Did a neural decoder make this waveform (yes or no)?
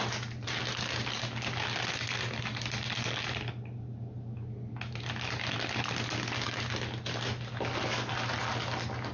no